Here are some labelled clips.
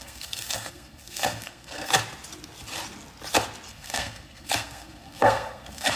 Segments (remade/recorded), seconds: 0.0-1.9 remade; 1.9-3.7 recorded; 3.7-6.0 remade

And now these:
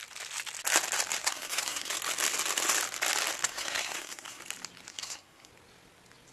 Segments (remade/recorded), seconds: 0.0-1.2 recorded; 1.2-1.9 remade; 1.9-3.4 recorded; 3.4-4.4 remade; 4.4-4.9 recorded; 4.9-5.5 remade; 5.5-6.3 recorded

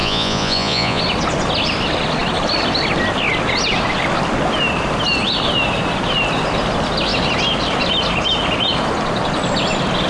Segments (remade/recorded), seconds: 0.0-1.0 remade; 1.0-10.1 recorded

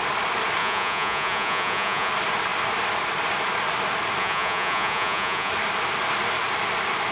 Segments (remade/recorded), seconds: 0.0-0.6 recorded; 0.6-2.1 remade; 2.1-4.2 recorded; 4.2-5.5 remade; 5.5-7.1 recorded

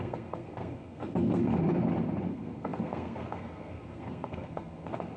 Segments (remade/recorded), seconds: 0.0-1.5 remade; 1.5-2.3 recorded; 2.3-5.2 remade

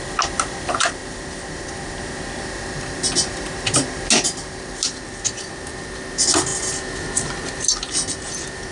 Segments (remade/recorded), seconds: 0.0-8.7 recorded

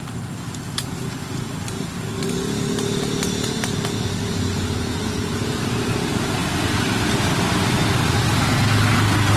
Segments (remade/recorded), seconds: 0.0-9.4 recorded

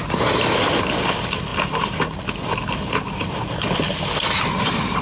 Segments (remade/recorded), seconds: 0.0-5.0 recorded